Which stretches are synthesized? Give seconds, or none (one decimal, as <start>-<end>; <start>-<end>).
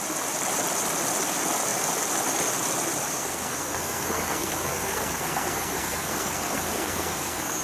3.1-7.6